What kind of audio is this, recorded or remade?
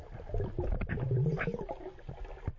recorded